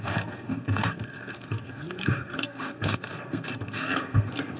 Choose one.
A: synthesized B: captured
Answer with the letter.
A